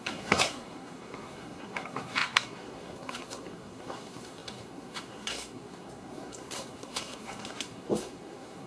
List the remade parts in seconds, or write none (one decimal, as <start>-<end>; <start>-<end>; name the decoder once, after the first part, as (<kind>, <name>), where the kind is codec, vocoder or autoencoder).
0.0-8.7 (codec, SNAC)